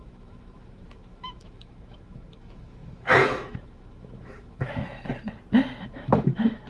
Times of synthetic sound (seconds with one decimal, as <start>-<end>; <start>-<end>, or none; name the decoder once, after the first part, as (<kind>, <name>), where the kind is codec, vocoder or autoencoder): 0.0-5.1 (autoencoder, DAC-VAE); 5.8-6.7